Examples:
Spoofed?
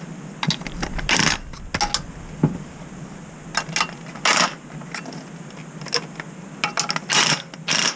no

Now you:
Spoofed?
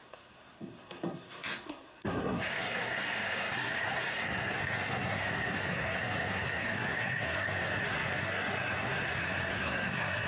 yes